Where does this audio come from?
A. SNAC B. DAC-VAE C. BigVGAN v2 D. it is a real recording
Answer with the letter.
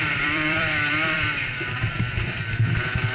C